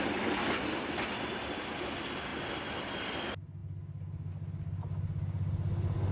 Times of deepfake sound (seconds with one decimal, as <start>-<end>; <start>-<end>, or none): none